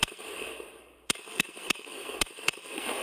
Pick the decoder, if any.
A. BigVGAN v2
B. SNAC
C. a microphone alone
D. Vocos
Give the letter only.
B